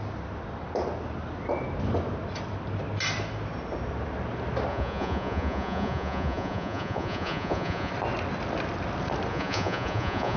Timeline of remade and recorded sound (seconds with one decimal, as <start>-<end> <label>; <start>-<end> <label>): 0.0-4.7 recorded; 4.7-7.9 remade; 7.9-9.3 recorded; 9.3-10.4 remade